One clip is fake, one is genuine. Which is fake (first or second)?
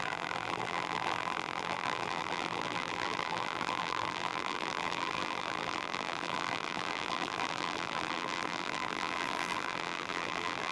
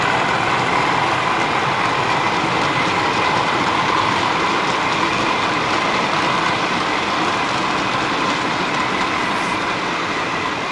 first